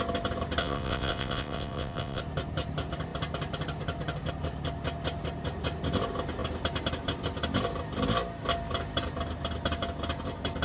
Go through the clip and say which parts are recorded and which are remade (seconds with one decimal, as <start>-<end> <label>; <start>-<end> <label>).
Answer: 0.0-0.6 recorded; 0.6-2.2 remade; 2.2-10.6 recorded